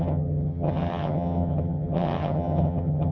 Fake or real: fake